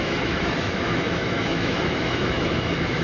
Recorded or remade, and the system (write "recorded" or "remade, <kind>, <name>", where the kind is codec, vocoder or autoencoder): remade, autoencoder, DAC-VAE